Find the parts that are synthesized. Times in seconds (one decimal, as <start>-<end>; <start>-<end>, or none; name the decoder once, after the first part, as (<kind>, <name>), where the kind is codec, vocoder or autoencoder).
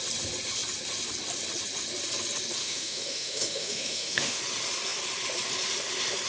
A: 2.6-4.4 (autoencoder, DAC-VAE)